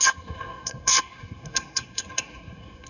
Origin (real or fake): fake